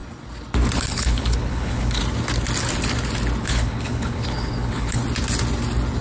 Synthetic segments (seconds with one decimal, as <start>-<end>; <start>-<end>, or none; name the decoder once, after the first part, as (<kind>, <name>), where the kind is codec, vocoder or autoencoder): 0.8-2.0 (codec, HILCodec); 3.4-5.0